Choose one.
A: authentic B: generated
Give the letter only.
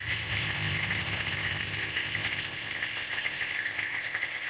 B